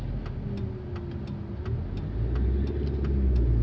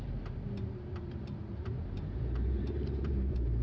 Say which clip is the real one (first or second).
first